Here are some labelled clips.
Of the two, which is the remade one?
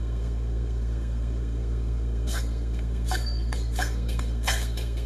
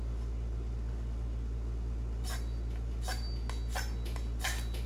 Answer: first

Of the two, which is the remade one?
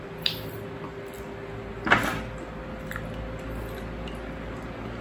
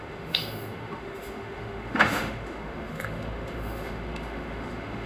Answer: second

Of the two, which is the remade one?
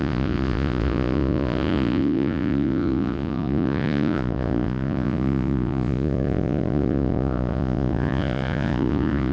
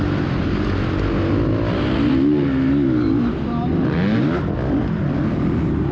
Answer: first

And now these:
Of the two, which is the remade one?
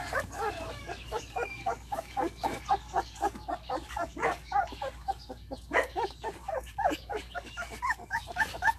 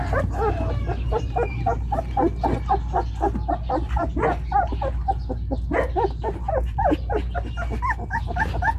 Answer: first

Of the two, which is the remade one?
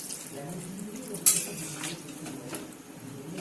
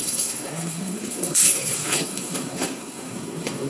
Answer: second